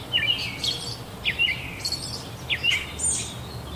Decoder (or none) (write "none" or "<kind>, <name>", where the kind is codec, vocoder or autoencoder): none